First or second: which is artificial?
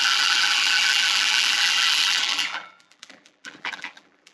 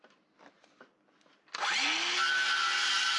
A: first